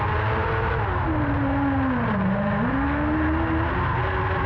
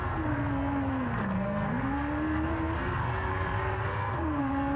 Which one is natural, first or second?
first